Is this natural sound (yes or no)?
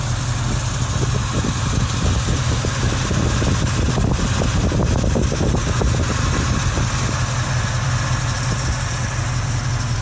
yes